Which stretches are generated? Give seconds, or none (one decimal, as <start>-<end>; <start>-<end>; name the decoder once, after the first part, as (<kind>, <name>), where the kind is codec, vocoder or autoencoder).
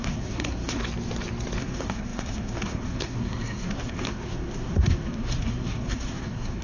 0.0-0.8 (codec, SNAC); 1.6-6.6